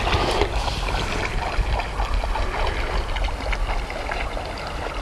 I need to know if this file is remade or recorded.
recorded